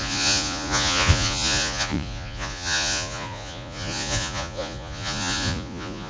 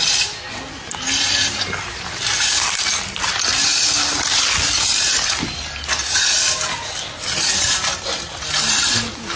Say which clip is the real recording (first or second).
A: second